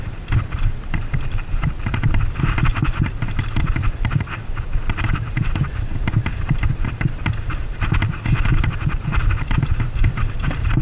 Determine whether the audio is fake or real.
fake